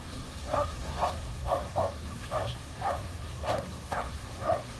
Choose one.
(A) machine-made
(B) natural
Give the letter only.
A